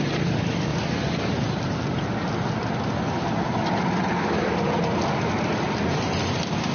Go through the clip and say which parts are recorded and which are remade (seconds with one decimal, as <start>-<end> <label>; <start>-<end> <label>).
0.0-6.7 recorded